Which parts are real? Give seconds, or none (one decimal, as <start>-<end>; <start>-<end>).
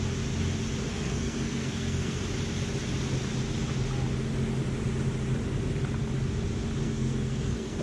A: 0.0-0.9; 2.2-6.8